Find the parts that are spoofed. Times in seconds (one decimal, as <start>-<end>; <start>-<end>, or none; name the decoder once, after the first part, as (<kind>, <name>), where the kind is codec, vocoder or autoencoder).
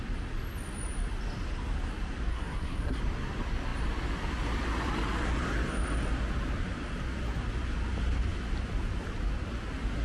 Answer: 2.3-3.0 (codec, SNAC)